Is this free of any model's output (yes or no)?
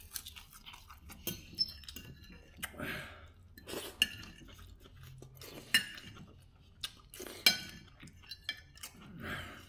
yes